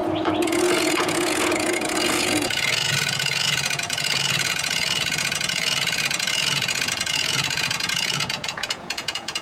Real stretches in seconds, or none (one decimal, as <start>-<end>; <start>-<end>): none